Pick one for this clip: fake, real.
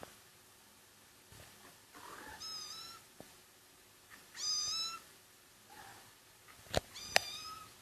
real